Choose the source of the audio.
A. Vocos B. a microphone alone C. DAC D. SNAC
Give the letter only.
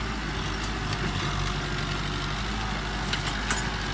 B